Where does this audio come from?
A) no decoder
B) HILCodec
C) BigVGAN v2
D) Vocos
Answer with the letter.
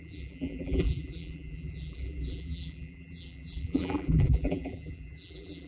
C